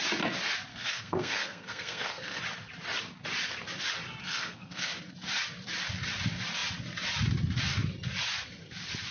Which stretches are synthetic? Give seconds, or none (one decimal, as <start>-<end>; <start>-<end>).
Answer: 0.7-2.4; 4.2-4.9